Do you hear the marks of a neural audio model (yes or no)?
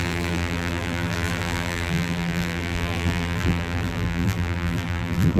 yes